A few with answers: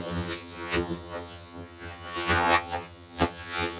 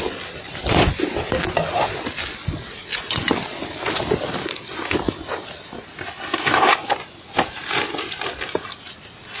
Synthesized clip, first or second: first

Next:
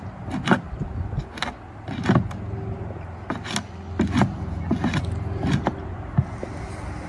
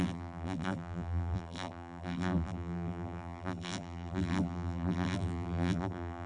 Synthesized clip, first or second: second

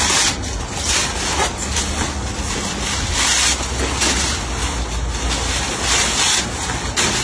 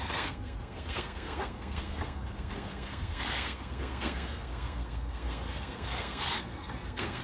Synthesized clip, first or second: second